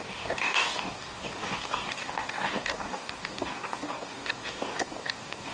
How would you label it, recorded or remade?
remade